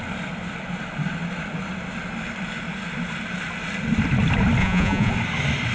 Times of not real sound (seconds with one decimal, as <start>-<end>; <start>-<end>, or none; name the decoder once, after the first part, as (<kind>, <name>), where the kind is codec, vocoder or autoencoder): 4.6-5.1 (vocoder, Vocos)